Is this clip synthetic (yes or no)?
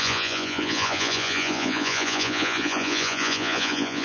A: yes